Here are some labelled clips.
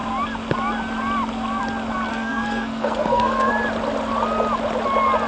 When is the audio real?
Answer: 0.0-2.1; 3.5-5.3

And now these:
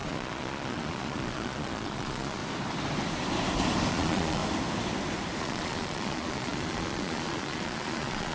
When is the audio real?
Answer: 2.4-3.9; 4.4-5.4

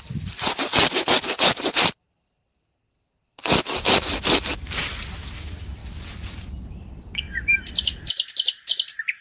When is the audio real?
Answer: 0.0-9.2

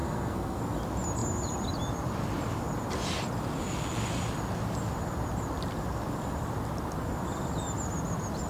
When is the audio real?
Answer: 0.6-8.5

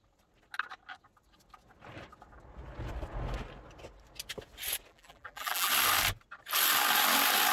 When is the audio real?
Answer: 0.0-4.9; 5.7-7.5